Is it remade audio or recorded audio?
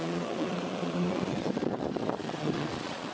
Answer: remade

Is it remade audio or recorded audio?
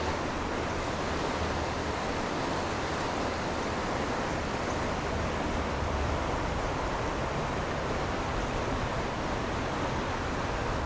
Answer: recorded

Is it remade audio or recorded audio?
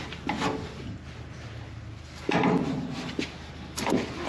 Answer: recorded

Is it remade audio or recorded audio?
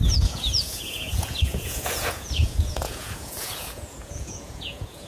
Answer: remade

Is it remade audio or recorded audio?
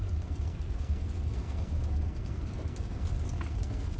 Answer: remade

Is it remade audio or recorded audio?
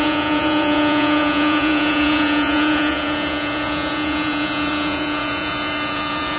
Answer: remade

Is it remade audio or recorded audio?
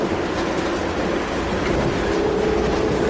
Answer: recorded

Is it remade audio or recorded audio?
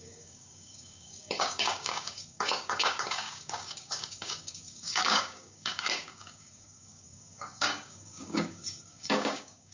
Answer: remade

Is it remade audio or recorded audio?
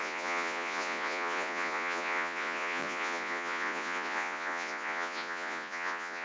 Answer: remade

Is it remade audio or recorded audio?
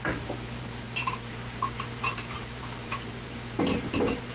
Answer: remade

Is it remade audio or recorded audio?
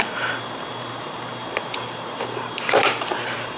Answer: remade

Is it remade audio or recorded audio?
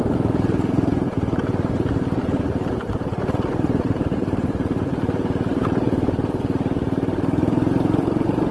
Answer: remade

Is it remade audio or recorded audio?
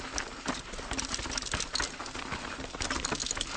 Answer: recorded